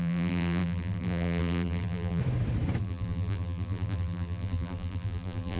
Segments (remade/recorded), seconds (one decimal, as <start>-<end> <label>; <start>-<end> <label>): 0.0-2.2 remade; 2.2-2.8 recorded; 2.8-5.6 remade